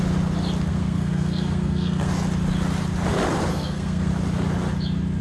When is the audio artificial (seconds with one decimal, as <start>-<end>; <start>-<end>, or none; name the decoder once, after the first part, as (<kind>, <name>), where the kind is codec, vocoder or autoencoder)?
0.7-2.1 (codec, SNAC); 3.5-4.1